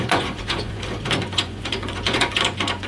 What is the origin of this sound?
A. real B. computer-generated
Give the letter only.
B